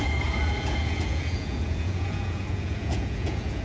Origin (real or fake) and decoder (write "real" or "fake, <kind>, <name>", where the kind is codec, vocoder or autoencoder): fake, vocoder, Vocos